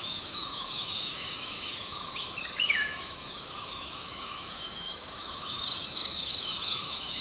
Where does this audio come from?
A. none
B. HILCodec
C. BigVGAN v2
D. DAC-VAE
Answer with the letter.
D